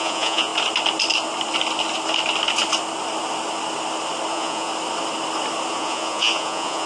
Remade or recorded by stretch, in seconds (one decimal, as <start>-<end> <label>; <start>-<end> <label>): 0.0-0.5 remade; 0.5-4.3 recorded; 4.3-4.7 remade; 4.7-5.7 recorded; 5.7-6.9 remade